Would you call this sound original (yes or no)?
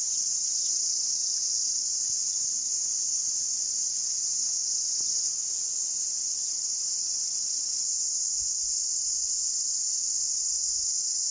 yes